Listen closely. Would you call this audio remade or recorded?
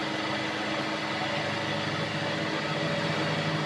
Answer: recorded